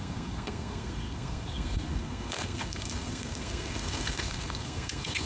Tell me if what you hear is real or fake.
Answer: fake